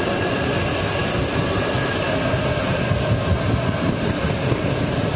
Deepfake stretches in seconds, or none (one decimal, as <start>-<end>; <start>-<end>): none